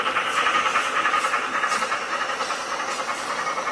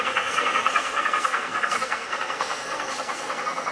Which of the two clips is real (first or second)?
first